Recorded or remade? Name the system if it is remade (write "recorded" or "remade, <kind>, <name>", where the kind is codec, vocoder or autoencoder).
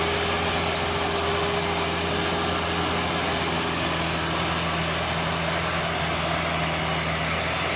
recorded